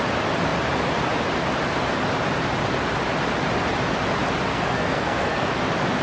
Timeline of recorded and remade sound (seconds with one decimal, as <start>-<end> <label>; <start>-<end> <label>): 0.0-4.5 recorded; 4.5-5.5 remade; 5.5-6.0 recorded